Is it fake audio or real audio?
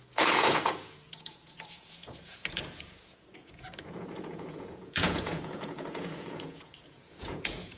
fake